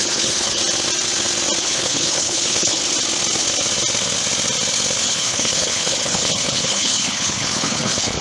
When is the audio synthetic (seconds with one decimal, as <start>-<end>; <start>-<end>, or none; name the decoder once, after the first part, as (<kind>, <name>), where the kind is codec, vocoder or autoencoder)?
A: 0.0-0.6 (codec, HILCodec); 1.6-2.8; 5.0-8.2